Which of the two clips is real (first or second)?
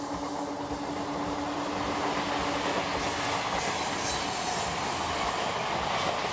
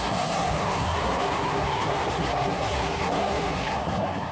first